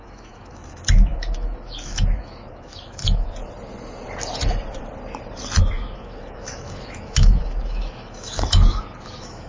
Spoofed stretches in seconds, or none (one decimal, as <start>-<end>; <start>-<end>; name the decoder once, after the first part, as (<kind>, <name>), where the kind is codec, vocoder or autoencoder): 0.0-3.4 (autoencoder, DAC-VAE); 5.6-9.5